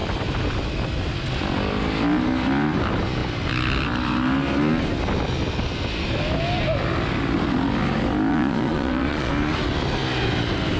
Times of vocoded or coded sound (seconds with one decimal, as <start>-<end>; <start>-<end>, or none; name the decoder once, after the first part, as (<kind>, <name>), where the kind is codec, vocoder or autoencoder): 8.3-9.3 (vocoder, Vocos)